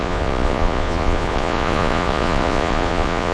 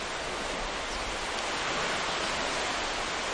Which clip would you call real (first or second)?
second